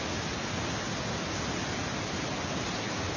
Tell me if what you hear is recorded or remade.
recorded